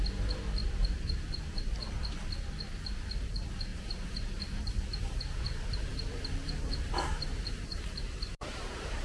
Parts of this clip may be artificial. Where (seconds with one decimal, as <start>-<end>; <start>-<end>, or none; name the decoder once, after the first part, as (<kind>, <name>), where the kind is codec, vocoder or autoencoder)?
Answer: 0.6-2.0 (vocoder, BigVGAN v2); 3.7-9.0